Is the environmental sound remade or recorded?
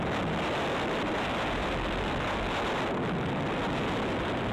recorded